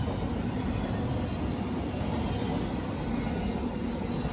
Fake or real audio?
real